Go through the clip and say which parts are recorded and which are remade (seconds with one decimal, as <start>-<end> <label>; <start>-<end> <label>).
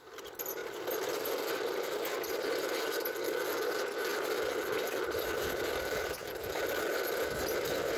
0.0-0.6 recorded; 0.6-1.5 remade; 1.5-8.0 recorded